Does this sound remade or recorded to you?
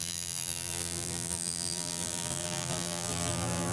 remade